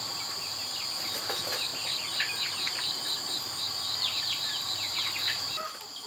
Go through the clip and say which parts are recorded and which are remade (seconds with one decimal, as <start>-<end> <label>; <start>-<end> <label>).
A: 0.0-1.7 remade; 1.7-2.4 recorded; 2.4-6.1 remade